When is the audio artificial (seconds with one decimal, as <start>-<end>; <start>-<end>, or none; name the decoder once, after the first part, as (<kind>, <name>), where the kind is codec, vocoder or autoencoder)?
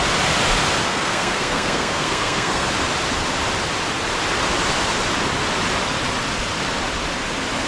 0.9-2.7 (codec, SNAC)